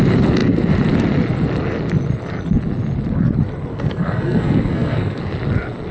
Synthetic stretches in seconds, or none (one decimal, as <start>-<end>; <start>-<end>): 3.7-5.2